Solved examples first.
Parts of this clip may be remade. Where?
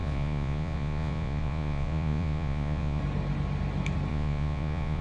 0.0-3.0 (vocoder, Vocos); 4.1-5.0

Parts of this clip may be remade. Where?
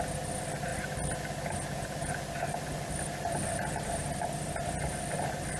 none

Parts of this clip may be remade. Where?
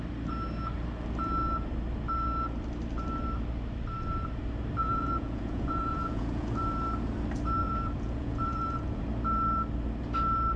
4.8-6.5 (vocoder, Vocos); 7.6-9.0